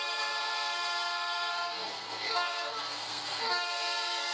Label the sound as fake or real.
fake